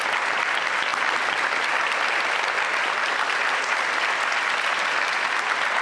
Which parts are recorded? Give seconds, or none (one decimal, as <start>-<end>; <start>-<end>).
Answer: 0.0-5.8